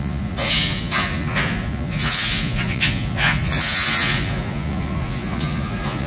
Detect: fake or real fake